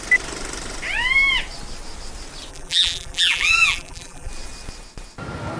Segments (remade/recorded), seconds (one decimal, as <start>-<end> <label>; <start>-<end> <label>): 0.0-2.5 recorded; 2.5-4.3 remade; 4.3-5.6 recorded